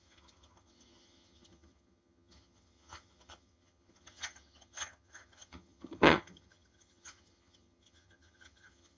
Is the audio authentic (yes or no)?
no